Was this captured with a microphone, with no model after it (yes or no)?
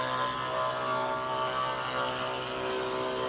yes